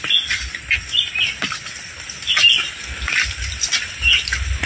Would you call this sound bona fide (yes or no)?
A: yes